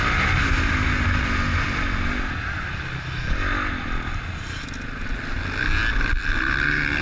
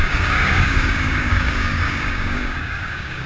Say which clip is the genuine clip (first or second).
first